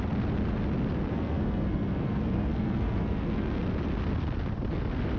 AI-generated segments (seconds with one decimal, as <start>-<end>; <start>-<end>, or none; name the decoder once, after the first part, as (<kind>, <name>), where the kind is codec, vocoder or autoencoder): 1.1-3.6 (codec, SNAC)